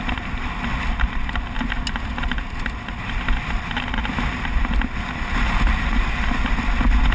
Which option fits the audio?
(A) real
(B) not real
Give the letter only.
A